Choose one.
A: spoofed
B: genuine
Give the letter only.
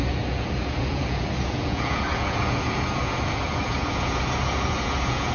A